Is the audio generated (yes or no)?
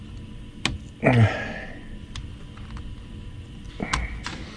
no